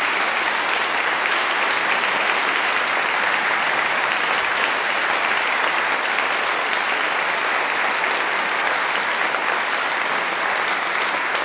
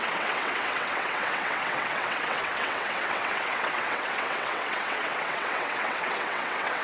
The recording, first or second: first